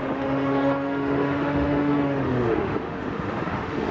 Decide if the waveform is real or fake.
fake